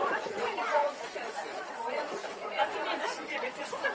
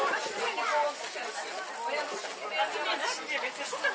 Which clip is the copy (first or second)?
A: first